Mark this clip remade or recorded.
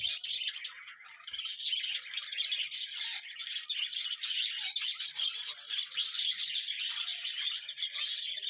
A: recorded